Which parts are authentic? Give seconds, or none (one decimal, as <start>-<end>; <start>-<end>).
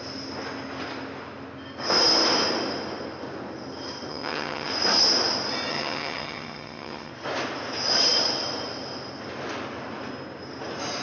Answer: 0.0-4.1; 4.7-5.7; 7.1-11.0